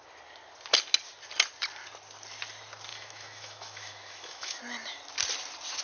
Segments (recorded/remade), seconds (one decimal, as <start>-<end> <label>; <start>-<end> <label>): 0.0-2.9 recorded; 2.9-4.6 remade; 4.6-5.8 recorded